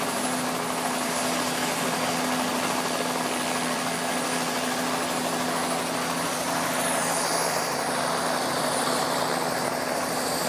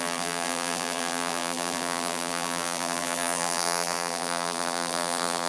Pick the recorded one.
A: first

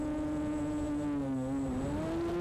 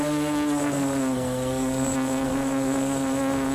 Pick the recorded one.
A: first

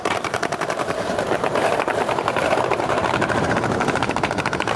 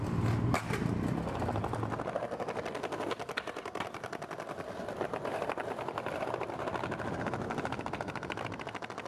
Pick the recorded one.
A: second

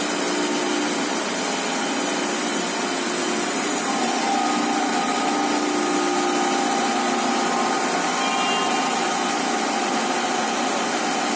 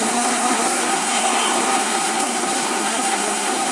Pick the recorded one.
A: first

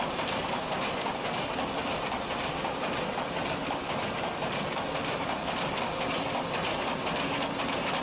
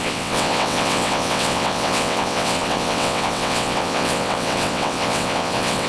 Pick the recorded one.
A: first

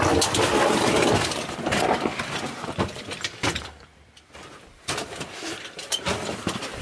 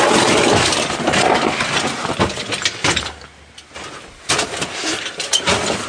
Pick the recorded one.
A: second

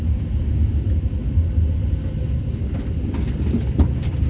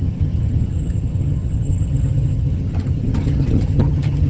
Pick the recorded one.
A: first